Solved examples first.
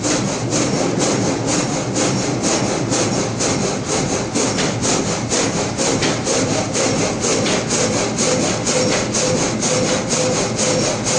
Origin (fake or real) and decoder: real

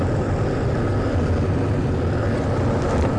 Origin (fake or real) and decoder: real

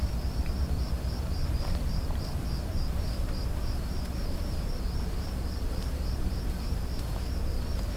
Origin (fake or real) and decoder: fake, vocoder, BigVGAN v2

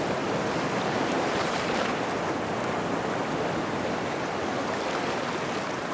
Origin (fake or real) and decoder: real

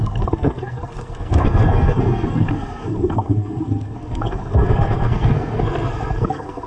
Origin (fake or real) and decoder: fake, codec, SNAC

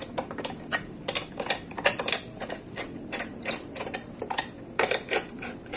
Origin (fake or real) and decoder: fake, vocoder, BigVGAN v2